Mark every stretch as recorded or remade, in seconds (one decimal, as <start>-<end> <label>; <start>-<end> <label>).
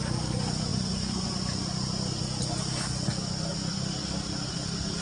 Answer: 0.0-5.0 recorded